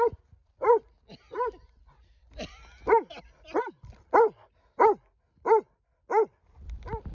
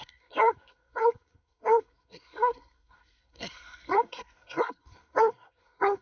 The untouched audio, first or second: first